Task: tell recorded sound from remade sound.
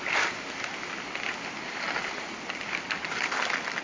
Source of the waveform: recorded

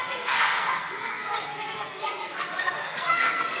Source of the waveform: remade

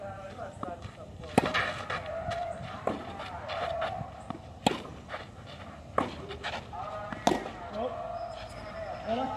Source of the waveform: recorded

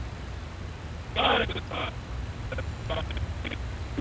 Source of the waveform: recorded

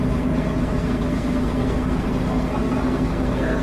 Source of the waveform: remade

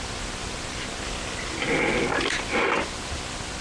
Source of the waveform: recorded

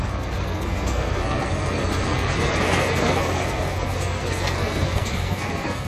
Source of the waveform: remade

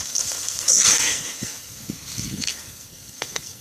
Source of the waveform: remade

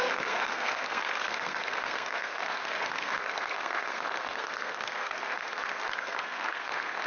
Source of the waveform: remade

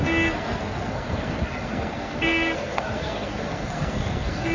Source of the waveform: remade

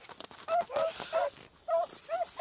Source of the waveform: recorded